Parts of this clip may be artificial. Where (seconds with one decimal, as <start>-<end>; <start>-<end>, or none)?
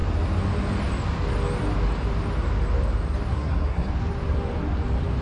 3.3-3.9